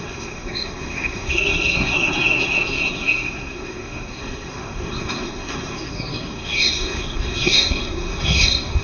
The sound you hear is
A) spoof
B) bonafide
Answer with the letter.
A